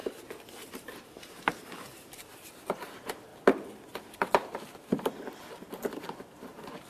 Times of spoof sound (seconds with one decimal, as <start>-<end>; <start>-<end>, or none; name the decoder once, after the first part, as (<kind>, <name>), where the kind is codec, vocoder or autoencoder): 0.7-3.3 (vocoder, BigVGAN v2); 4.0-6.9